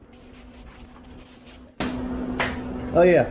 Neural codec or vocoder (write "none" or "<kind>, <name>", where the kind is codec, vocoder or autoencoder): none